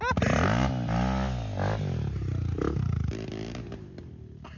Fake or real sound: real